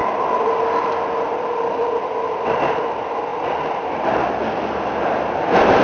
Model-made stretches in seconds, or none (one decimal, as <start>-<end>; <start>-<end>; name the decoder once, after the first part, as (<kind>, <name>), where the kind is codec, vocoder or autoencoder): none